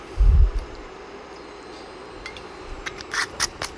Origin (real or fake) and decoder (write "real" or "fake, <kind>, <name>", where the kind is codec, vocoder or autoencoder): real